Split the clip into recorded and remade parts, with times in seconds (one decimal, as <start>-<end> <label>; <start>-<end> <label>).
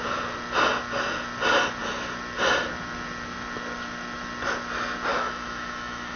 0.0-5.1 recorded; 5.1-6.2 remade